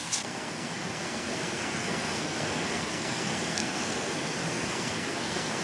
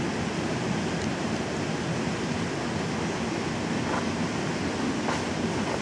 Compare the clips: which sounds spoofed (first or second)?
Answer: first